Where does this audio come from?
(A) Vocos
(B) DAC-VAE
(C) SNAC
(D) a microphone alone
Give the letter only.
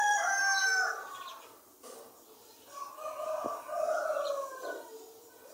D